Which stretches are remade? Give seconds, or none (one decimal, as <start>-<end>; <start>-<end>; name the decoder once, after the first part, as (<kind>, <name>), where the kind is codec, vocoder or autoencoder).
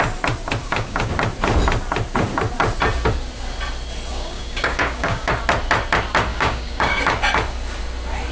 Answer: 0.6-1.1 (codec, DAC); 4.1-5.3; 6.3-7.0